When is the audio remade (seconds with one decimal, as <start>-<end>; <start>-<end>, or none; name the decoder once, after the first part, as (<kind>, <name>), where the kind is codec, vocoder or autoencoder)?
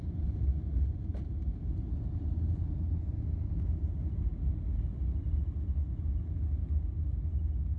none